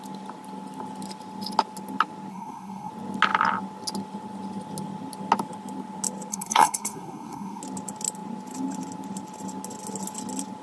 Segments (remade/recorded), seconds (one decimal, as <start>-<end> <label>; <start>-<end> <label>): 0.0-2.3 recorded; 2.3-2.9 remade; 2.9-6.3 recorded; 6.3-7.6 remade; 7.6-10.6 recorded